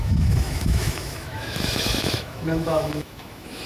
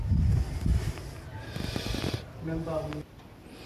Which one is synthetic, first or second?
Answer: first